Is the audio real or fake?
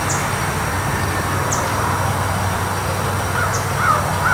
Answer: real